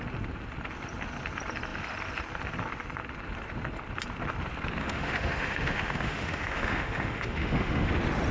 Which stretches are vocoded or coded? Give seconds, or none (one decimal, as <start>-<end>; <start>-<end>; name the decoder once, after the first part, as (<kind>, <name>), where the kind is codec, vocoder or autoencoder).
4.8-7.9 (autoencoder, DAC-VAE)